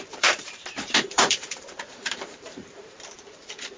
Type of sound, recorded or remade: remade